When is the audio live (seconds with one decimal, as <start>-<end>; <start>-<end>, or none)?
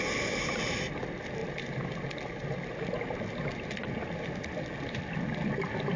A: 0.0-6.0